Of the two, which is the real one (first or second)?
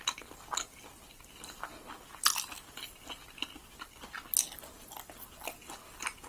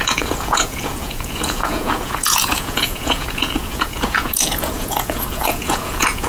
first